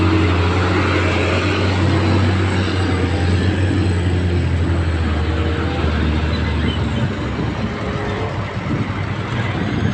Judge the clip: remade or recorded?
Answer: recorded